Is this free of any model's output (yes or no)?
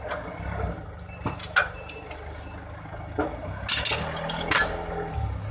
yes